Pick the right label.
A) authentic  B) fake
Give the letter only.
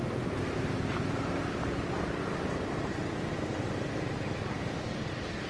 A